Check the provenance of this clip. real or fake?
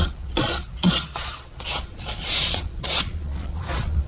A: fake